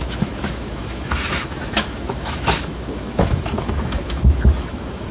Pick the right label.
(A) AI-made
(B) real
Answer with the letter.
A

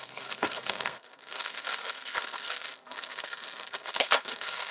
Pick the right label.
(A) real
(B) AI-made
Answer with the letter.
B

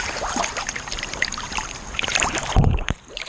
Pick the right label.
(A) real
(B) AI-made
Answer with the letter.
B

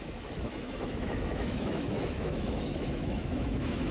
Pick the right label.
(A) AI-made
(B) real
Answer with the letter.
A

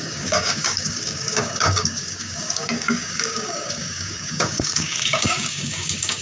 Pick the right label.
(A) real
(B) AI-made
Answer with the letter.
B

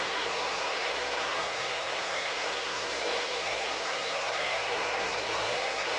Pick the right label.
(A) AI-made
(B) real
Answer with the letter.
A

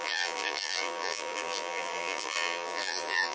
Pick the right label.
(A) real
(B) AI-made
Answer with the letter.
B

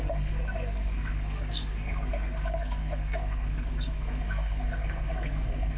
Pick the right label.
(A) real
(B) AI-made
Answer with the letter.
B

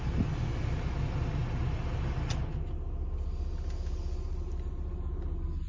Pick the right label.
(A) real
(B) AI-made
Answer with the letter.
A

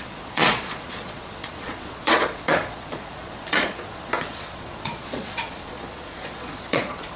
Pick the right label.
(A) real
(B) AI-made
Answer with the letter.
B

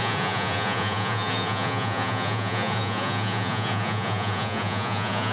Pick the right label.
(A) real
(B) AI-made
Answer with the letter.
B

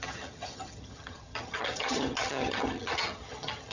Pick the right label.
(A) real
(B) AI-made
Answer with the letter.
B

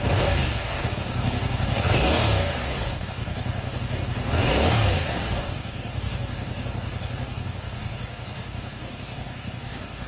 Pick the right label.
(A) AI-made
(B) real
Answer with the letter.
A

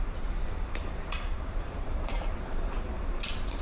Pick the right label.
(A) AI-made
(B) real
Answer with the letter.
A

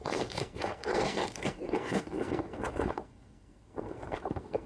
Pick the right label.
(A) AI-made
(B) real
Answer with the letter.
A